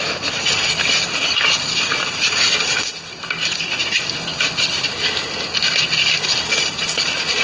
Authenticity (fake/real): real